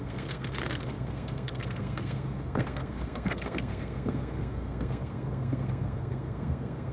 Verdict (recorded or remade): remade